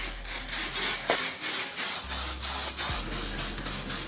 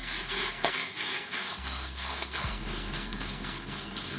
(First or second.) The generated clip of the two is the second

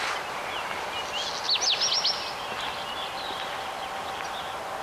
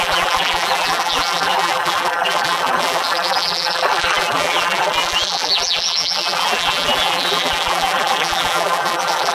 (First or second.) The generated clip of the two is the second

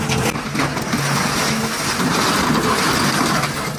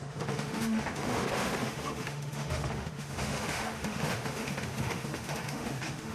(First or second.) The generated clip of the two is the second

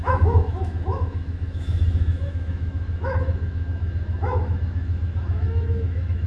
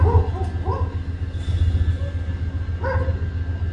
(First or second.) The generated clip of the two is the first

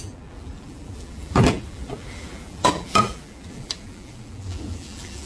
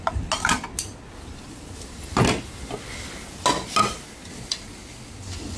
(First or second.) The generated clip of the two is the first